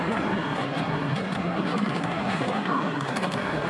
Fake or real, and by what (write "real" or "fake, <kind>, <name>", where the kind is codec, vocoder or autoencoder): fake, codec, SNAC